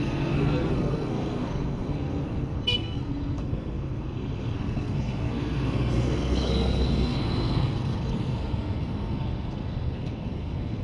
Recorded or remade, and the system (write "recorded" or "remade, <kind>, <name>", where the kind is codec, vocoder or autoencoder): remade, codec, SNAC